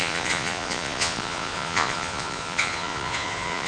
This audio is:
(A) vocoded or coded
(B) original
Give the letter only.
A